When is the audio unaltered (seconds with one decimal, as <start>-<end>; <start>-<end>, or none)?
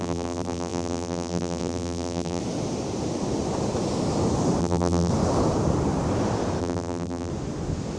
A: 2.4-4.6; 5.1-6.6; 7.3-8.0